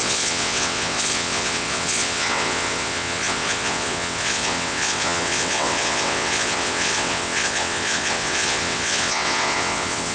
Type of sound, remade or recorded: remade